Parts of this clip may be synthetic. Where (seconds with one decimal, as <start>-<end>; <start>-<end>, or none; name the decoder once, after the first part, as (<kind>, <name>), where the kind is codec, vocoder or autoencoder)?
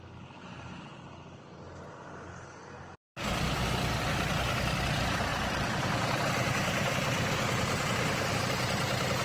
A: 5.3-8.4 (vocoder, BigVGAN v2)